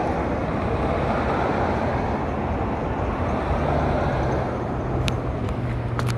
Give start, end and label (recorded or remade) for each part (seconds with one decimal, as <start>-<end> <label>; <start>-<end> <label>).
0.0-6.2 recorded